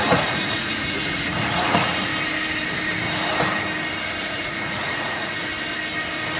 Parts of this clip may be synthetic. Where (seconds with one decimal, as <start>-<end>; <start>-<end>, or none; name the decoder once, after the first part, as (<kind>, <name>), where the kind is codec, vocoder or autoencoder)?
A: 0.0-2.1 (vocoder, Vocos); 4.2-5.5

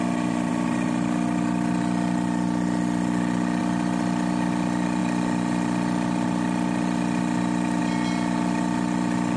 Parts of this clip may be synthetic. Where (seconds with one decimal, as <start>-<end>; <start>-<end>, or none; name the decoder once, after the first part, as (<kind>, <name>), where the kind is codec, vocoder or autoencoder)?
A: none

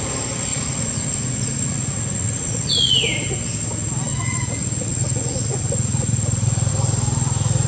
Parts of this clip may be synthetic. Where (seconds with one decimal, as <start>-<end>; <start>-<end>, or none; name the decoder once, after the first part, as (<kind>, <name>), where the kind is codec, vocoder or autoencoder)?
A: 0.5-3.0 (vocoder, Vocos); 4.1-6.7

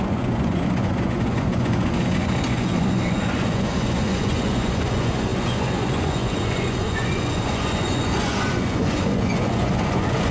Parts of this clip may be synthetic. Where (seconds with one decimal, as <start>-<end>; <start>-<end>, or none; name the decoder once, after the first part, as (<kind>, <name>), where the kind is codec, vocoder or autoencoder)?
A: 0.0-10.3 (vocoder, Vocos)

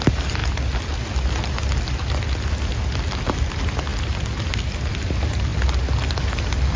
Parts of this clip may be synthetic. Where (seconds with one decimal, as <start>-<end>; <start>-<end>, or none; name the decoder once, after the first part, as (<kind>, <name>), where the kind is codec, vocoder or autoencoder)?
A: none

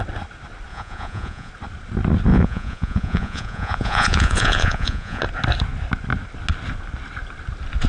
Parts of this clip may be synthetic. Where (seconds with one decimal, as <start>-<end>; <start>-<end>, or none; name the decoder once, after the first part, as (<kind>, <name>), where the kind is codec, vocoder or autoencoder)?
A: 0.7-1.5 (vocoder, Vocos); 2.3-5.2

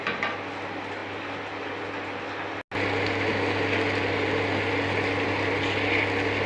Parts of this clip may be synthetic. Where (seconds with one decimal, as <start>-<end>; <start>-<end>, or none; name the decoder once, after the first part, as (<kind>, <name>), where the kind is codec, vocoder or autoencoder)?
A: none

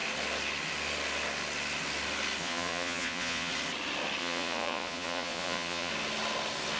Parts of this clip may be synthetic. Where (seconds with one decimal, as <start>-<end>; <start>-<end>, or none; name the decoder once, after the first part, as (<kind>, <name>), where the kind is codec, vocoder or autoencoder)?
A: 2.4-3.5 (vocoder, Vocos); 4.2-5.9